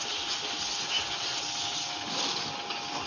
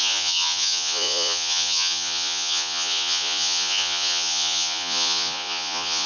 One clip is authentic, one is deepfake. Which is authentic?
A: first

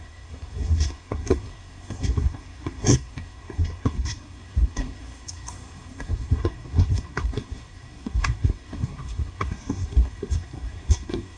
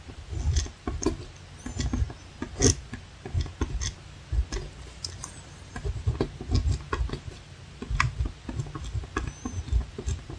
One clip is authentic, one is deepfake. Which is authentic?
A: second